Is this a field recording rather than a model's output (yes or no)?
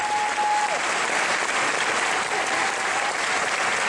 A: yes